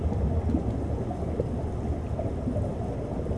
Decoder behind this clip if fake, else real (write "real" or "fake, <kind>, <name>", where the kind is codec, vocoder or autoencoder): real